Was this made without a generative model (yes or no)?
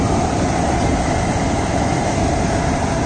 no